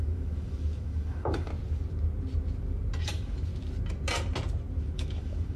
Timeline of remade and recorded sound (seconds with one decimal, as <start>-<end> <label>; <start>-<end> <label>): 0.0-1.5 remade; 1.5-3.0 recorded; 3.0-3.5 remade; 3.5-4.8 recorded; 4.8-5.6 remade